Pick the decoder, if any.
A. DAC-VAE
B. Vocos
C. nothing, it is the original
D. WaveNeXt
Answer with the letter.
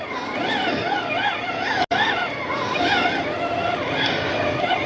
C